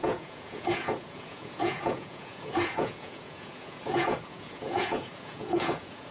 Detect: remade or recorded remade